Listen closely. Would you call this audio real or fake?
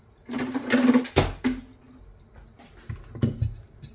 real